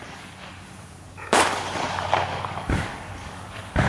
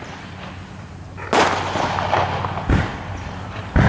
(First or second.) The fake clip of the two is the first